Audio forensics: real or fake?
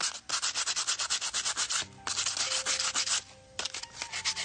real